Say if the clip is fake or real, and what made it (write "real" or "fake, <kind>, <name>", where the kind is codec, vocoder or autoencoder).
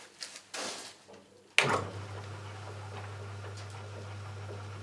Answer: real